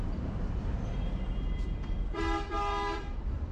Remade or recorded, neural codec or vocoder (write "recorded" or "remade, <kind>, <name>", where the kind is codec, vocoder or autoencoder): remade, vocoder, BigVGAN v2